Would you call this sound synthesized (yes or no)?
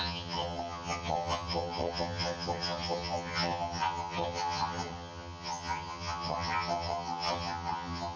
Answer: yes